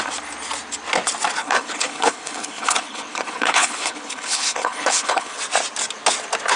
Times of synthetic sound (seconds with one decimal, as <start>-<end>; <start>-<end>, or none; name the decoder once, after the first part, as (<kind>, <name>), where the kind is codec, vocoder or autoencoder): 1.4-5.4 (codec, HILCodec)